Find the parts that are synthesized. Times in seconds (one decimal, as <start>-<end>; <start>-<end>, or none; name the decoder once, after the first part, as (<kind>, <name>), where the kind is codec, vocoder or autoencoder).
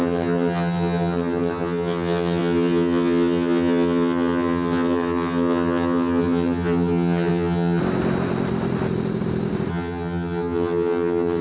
0.0-7.8 (vocoder, HiFi-GAN); 9.7-11.4